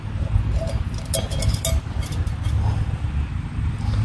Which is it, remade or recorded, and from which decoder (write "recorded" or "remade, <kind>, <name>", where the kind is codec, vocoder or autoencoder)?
recorded